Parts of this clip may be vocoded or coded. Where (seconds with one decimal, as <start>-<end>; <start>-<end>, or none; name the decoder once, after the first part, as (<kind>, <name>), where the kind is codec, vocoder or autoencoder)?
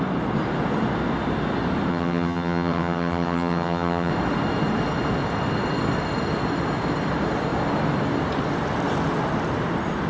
1.9-4.1 (vocoder, HiFi-GAN)